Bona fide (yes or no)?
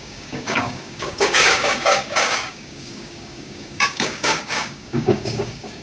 no